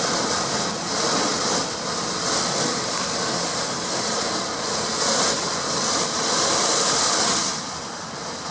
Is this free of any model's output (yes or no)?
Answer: yes